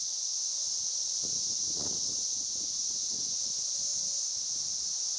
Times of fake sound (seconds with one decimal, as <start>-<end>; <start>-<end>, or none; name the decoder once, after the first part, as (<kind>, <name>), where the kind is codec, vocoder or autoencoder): 0.9-3.3 (vocoder, Vocos)